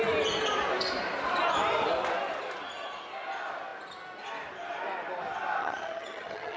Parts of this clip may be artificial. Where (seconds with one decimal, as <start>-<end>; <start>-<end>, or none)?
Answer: 5.6-6.6

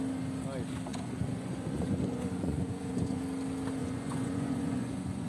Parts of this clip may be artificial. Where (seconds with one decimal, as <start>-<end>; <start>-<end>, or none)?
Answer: 0.9-3.2; 3.8-5.3

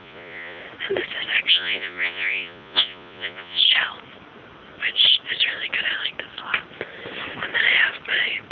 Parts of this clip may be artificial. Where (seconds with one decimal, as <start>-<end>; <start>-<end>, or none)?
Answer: 0.0-0.6; 1.5-3.6

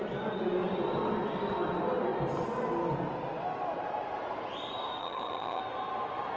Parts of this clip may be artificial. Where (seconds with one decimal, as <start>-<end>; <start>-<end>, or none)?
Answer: 5.0-5.6

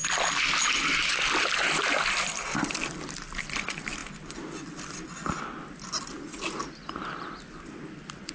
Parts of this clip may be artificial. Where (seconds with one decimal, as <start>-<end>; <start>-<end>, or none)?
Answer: 3.4-4.0; 4.8-6.1; 7.6-8.3

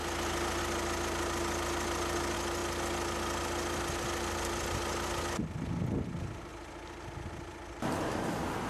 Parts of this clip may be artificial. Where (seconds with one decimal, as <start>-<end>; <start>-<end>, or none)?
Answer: none

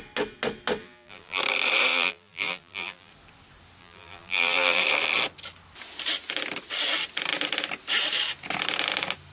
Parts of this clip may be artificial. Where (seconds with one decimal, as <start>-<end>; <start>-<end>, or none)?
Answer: 0.8-1.4; 1.9-3.1; 3.8-4.8

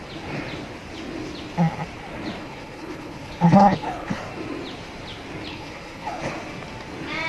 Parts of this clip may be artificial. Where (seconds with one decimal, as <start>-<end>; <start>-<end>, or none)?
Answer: 2.4-4.2; 5.5-6.3